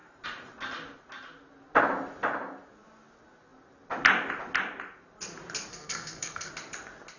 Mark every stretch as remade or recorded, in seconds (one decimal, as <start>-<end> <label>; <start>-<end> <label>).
0.0-5.7 recorded; 5.7-6.5 remade; 6.5-7.2 recorded